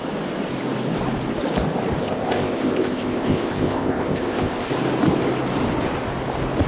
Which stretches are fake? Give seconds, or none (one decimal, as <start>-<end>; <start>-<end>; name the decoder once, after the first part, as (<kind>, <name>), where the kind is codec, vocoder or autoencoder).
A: 2.0-4.7 (codec, ZipCodec)